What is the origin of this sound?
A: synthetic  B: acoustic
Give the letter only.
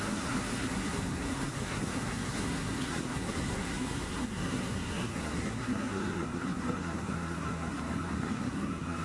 A